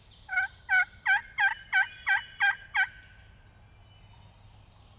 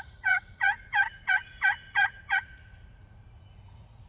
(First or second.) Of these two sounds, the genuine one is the first